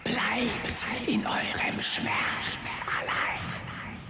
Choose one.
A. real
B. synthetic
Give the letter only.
A